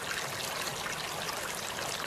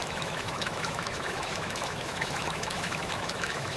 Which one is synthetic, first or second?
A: second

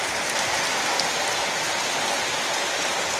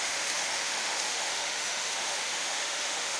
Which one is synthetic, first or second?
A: second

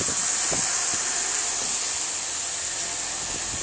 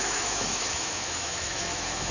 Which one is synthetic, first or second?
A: second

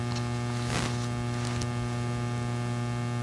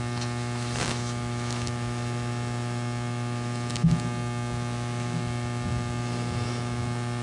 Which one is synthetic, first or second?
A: second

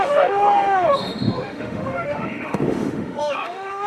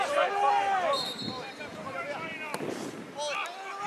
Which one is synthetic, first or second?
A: first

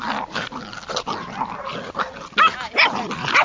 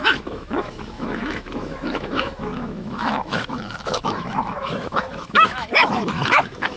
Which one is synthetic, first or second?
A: second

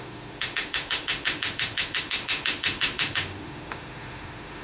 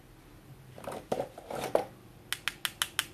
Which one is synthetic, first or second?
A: first